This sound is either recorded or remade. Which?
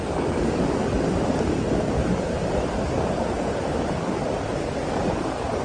remade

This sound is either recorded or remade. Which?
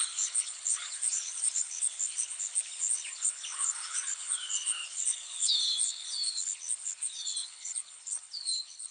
remade